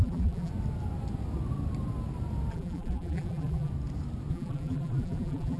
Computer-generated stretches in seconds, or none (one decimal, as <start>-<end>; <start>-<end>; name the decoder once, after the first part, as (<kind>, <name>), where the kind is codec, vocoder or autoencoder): 0.0-0.5 (vocoder, BigVGAN v2); 2.5-3.7; 4.3-5.6